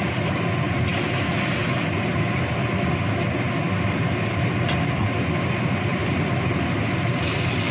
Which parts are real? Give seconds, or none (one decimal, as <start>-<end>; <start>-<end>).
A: 0.0-7.7